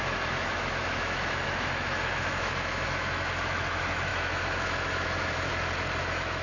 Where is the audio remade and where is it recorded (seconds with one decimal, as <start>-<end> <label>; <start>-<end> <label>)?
0.0-5.5 remade; 5.5-6.0 recorded; 6.0-6.4 remade

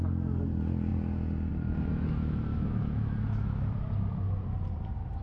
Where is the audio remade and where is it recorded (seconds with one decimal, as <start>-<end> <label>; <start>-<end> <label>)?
0.0-1.9 recorded; 1.9-3.7 remade; 3.7-5.2 recorded

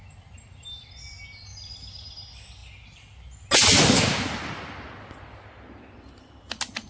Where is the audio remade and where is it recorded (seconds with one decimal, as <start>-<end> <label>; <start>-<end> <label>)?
0.0-6.9 recorded

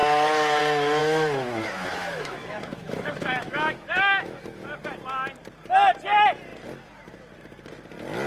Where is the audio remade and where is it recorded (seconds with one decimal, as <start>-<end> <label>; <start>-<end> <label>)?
0.0-0.6 remade; 0.6-1.0 recorded; 1.0-4.6 remade; 4.6-8.3 recorded